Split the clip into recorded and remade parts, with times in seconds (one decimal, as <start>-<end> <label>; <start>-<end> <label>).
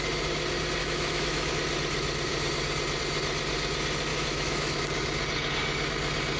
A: 0.0-0.8 recorded; 0.8-1.5 remade; 1.5-4.1 recorded; 4.1-4.8 remade; 4.8-6.4 recorded